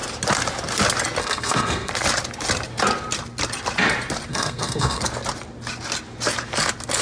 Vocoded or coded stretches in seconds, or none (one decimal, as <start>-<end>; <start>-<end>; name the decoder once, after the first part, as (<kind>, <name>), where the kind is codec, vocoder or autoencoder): 1.2-1.9 (codec, SNAC); 4.3-5.0